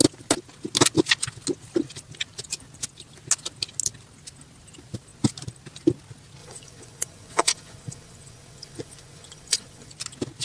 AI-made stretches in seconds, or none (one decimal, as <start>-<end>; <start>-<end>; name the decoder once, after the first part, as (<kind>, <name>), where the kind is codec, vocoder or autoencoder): 6.4-9.9 (vocoder, Vocos)